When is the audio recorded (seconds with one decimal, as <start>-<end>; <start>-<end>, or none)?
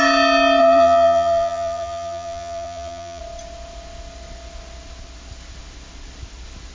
0.0-0.6; 3.2-6.7